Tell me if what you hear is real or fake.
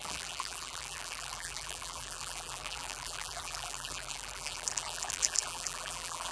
fake